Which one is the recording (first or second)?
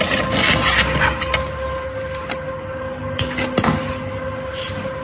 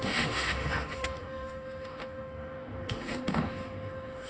first